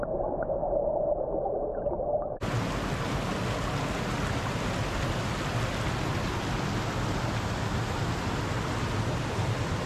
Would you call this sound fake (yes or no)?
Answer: no